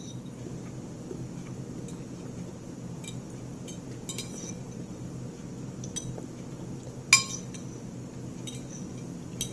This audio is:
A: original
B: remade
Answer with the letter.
A